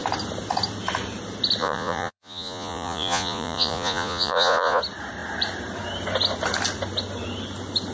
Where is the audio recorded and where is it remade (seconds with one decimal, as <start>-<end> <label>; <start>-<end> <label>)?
0.0-1.6 recorded; 1.6-4.8 remade; 4.8-7.9 recorded

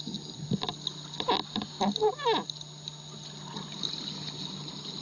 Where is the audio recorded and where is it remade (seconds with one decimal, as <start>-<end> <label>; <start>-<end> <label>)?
0.0-5.0 recorded